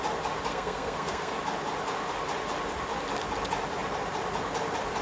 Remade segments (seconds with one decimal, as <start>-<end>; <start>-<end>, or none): 0.5-1.3